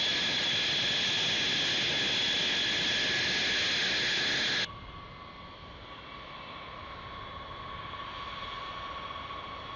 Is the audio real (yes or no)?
yes